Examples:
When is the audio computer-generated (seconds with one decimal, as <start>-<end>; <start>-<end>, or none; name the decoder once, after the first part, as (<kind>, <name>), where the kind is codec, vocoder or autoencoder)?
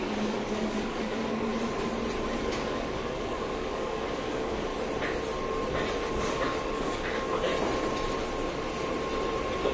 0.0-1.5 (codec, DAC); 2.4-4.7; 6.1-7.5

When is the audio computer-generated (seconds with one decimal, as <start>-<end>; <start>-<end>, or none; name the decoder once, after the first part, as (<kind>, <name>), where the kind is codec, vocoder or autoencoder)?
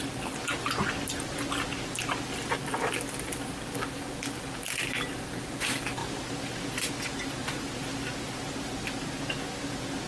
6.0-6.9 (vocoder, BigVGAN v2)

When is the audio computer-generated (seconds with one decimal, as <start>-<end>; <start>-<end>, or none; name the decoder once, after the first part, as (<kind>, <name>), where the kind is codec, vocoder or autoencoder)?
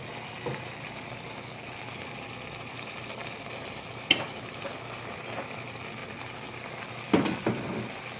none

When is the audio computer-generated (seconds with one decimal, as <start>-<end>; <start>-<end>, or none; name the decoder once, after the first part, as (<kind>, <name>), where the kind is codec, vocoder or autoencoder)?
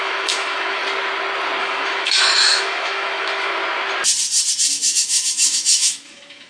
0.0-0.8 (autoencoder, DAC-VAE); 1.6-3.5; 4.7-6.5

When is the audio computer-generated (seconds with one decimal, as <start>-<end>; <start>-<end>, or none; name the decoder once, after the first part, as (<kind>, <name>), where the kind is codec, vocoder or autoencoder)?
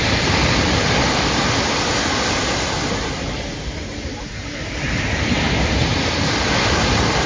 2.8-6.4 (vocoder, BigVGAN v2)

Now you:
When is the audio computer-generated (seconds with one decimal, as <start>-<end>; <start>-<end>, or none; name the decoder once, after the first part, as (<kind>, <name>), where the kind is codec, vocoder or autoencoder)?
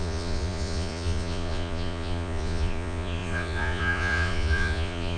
0.0-5.2 (vocoder, Vocos)